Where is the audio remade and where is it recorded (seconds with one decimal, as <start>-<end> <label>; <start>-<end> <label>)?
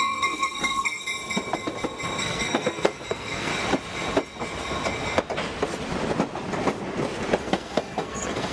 0.0-1.0 remade; 1.0-2.2 recorded; 2.2-3.5 remade; 3.5-7.4 recorded; 7.4-8.5 remade